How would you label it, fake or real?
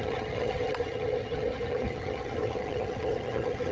fake